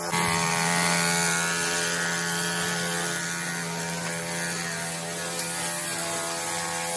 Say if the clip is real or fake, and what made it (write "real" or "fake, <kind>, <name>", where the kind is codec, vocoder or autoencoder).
real